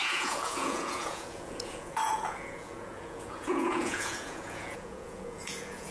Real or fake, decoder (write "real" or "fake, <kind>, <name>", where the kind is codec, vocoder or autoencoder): fake, vocoder, Vocos